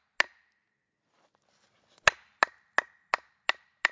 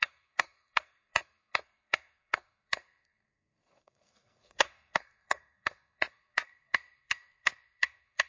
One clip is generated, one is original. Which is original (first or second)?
first